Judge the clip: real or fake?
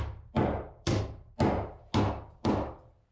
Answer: real